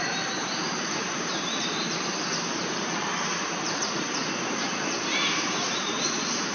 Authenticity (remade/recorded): remade